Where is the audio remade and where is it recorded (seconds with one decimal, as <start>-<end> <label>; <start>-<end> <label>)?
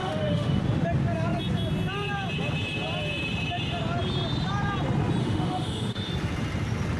0.0-0.6 remade; 0.6-5.2 recorded; 5.2-6.1 remade; 6.1-7.0 recorded